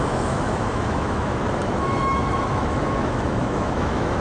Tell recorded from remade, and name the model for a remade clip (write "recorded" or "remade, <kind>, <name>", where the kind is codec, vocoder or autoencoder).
remade, autoencoder, DAC-VAE